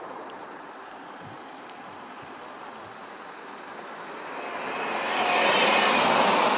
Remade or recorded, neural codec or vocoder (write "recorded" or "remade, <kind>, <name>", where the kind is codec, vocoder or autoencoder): remade, vocoder, BigVGAN v2